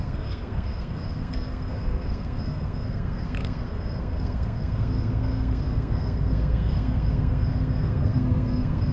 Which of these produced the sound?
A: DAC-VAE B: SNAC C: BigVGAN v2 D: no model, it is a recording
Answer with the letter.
B